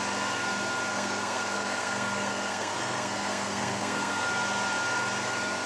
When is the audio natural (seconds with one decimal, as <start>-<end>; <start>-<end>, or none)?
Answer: 0.0-0.9; 4.3-5.7